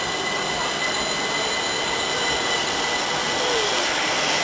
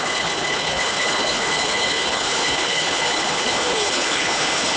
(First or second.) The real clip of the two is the first